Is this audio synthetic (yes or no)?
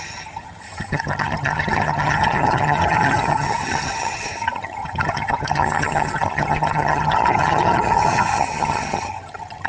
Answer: yes